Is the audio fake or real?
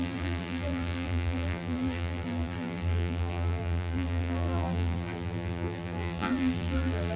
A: fake